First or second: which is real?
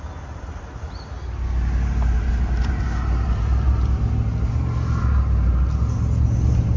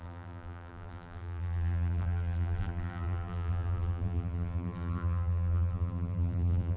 first